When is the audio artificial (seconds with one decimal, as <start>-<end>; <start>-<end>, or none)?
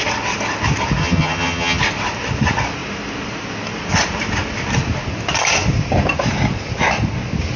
1.0-1.8